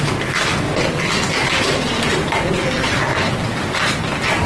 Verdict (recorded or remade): recorded